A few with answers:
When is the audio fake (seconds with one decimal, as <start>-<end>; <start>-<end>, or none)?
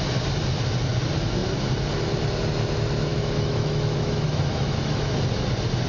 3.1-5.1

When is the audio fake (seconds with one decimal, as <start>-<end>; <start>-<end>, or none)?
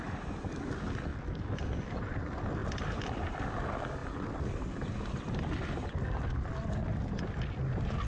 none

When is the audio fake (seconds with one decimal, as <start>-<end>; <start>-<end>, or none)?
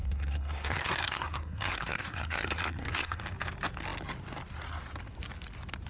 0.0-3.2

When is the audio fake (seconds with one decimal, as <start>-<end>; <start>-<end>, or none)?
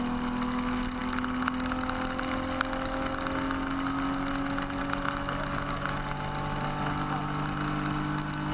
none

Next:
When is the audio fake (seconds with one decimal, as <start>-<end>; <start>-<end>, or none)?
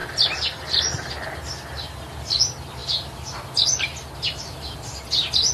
none